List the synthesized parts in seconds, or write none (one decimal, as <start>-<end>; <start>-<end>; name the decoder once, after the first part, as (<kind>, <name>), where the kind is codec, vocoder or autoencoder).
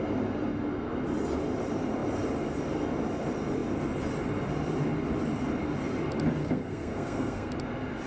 6.4-7.5 (codec, SNAC)